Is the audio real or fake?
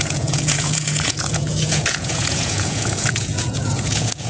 fake